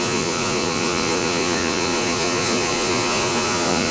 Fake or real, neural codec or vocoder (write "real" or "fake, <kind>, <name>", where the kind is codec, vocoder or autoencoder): fake, vocoder, Vocos